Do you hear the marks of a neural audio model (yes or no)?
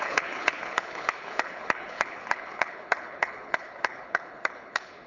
yes